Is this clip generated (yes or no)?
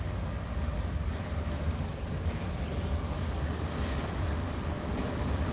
yes